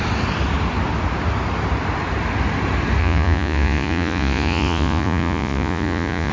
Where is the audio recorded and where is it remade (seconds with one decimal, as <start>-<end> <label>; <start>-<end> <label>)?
0.0-3.0 recorded; 3.0-6.3 remade